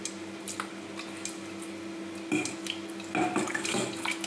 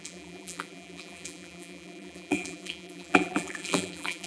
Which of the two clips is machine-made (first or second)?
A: second